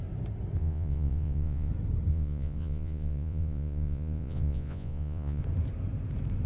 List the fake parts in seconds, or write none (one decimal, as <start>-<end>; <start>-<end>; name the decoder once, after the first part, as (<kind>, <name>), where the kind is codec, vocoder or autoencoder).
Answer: 0.6-1.7 (vocoder, Vocos); 2.1-5.4